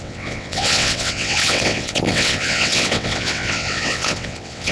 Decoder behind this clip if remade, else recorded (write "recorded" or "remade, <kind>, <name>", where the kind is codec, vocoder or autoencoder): remade, vocoder, WaveNeXt